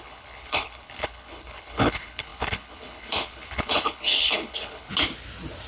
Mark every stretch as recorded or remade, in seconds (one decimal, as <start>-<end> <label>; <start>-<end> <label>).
0.0-4.9 remade; 4.9-5.7 recorded